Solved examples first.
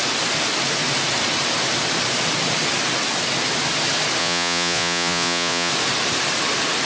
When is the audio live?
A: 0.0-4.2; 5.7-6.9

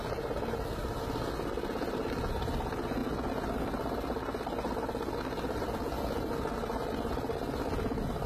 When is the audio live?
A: 0.0-8.3

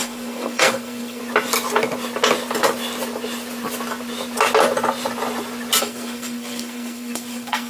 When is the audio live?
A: 1.2-5.8

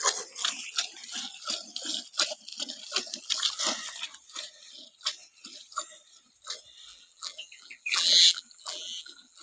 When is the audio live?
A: 0.0-6.9

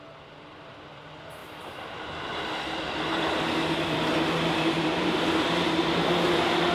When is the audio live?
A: 0.0-1.4; 5.4-6.7

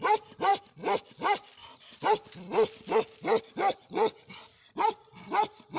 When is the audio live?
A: 0.0-3.8; 4.3-5.8

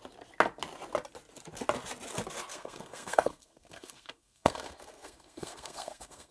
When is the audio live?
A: 0.0-2.5